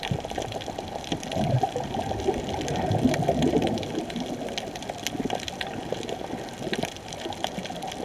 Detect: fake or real real